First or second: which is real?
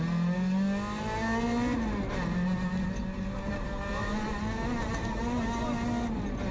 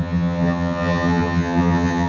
first